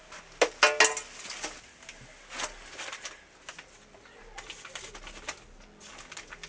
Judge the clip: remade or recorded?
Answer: recorded